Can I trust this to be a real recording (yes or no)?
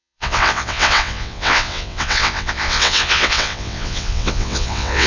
no